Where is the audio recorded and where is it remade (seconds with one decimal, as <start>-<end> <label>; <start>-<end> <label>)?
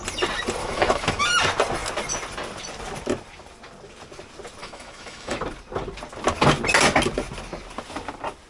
0.0-0.6 recorded; 0.6-1.2 remade; 1.2-4.6 recorded; 4.6-5.4 remade; 5.4-8.5 recorded